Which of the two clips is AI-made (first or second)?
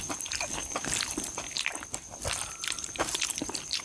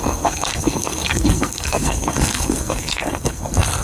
second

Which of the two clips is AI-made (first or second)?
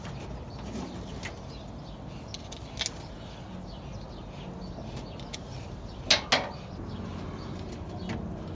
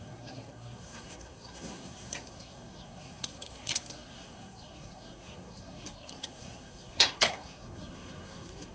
second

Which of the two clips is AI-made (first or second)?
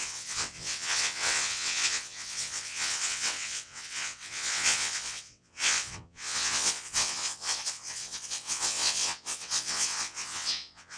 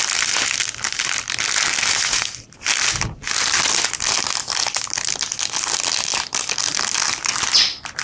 first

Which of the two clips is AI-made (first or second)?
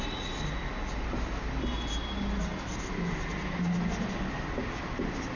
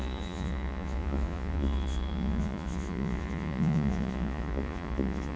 second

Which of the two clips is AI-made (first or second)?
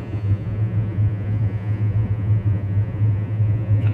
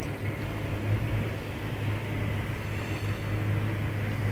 first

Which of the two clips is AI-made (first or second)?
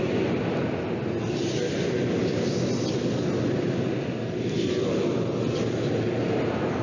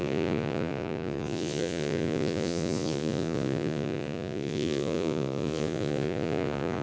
second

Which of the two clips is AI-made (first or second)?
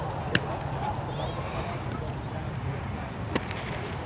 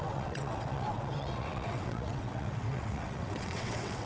second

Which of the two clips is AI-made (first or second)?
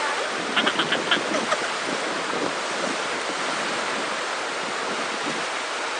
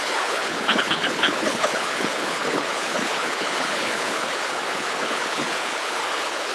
second